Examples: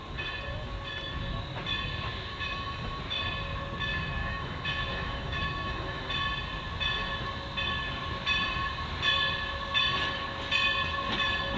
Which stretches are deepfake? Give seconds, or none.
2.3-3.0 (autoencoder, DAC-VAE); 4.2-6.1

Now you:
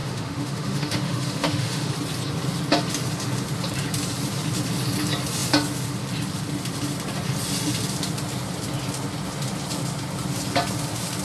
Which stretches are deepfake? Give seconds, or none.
0.0-1.9 (autoencoder, DAC-VAE)

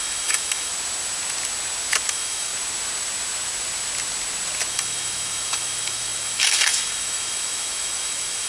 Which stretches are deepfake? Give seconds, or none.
0.0-0.7 (autoencoder, DAC-VAE); 2.1-2.5; 4.7-8.5

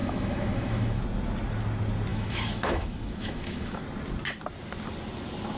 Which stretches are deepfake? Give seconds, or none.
0.0-1.0 (autoencoder, DAC-VAE); 2.1-3.8